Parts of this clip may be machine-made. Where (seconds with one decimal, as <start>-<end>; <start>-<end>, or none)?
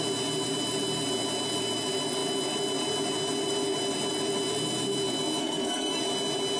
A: 5.4-6.0